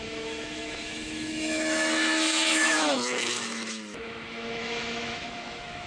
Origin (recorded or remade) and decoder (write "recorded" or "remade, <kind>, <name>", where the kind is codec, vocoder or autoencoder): remade, autoencoder, DAC-VAE